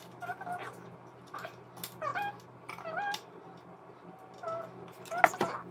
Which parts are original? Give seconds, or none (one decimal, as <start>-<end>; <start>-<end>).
0.0-5.7